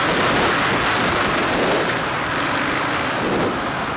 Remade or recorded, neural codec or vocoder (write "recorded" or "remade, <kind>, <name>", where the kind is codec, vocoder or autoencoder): recorded